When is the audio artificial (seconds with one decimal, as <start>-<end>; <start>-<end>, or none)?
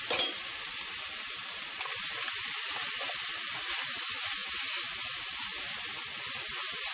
none